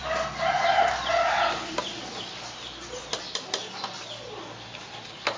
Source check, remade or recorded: recorded